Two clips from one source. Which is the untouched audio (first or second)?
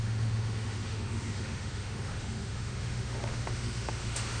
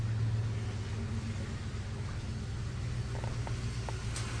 second